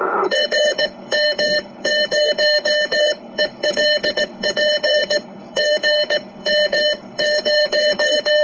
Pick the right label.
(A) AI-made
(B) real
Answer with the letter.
A